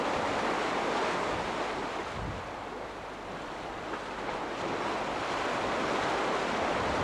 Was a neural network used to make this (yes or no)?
no